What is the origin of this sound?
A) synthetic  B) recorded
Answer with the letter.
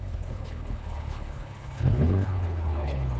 A